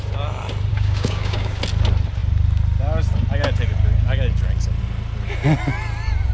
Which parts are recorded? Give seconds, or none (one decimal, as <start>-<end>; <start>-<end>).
0.0-0.7; 1.6-6.3